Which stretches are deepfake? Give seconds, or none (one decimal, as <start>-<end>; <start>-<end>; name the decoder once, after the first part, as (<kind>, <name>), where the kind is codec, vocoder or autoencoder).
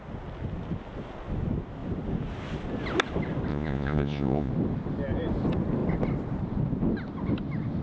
3.5-4.5 (vocoder, Vocos)